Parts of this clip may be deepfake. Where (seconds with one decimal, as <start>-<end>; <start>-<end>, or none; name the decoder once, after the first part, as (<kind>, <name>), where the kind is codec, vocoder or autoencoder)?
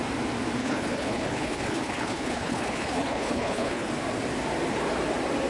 0.6-3.9 (codec, HILCodec)